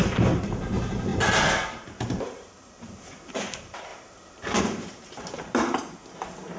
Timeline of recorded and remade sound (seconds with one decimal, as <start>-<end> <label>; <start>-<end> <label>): 0.0-1.1 remade; 1.1-2.2 recorded; 2.2-3.9 remade; 3.9-4.6 recorded; 4.6-6.0 remade; 6.0-6.6 recorded